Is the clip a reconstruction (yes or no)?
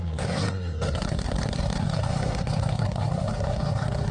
yes